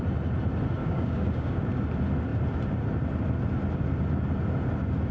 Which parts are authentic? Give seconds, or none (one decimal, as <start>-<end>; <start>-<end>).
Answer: 0.0-0.8; 1.6-5.1